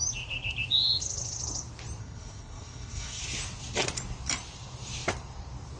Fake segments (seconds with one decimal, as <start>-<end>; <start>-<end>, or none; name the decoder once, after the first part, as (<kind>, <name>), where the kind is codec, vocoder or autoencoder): 2.0-3.2 (codec, SNAC)